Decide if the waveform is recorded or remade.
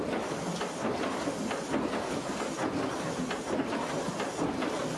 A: recorded